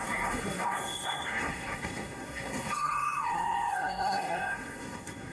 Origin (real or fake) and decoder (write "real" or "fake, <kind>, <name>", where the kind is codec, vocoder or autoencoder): fake, codec, SNAC